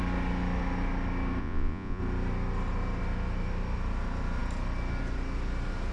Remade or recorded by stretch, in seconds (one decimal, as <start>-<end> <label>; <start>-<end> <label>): 0.0-1.4 recorded; 1.4-2.0 remade; 2.0-5.9 recorded